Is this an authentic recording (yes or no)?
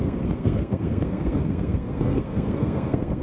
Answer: no